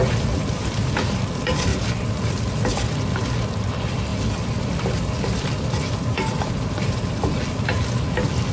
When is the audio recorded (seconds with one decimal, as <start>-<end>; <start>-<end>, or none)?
1.7-2.7; 4.1-6.9